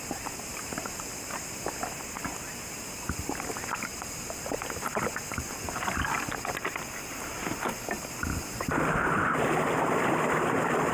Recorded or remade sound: recorded